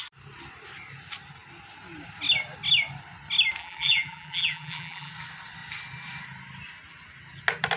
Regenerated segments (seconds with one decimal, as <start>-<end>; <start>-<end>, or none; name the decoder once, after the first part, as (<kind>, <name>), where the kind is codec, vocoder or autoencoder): 3.6-5.1 (vocoder, BigVGAN v2)